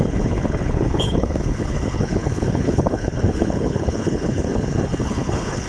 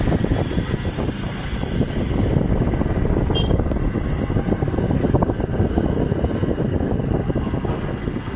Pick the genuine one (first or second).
second